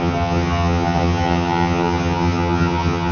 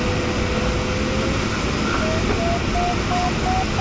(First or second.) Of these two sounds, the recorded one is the second